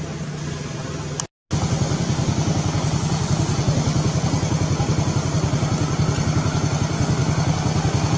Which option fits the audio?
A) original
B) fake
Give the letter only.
A